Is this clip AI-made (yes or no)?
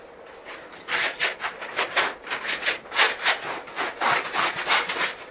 yes